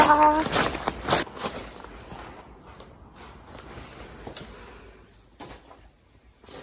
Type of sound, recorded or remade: recorded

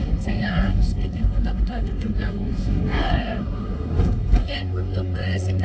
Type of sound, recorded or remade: remade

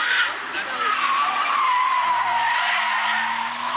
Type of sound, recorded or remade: recorded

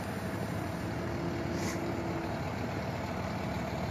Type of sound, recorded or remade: remade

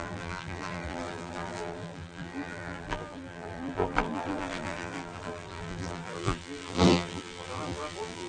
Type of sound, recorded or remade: remade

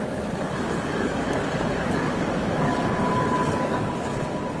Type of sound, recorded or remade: remade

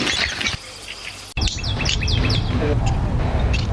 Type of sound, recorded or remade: recorded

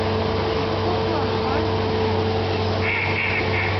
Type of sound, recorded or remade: recorded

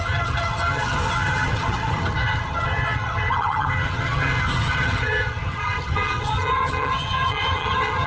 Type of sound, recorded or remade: remade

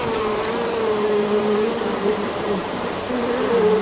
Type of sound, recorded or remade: remade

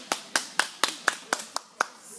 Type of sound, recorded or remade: recorded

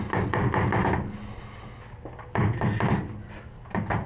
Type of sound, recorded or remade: recorded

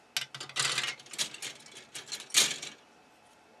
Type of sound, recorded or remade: recorded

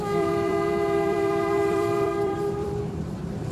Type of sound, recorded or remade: remade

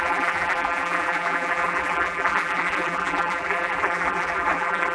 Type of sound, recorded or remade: remade